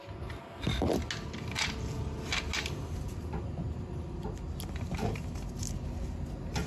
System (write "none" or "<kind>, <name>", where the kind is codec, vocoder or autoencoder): none